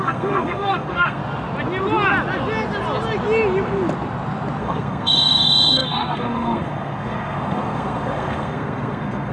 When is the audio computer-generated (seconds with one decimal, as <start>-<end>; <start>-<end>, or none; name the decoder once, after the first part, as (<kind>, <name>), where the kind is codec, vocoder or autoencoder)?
0.0-1.2 (codec, SNAC); 4.6-9.3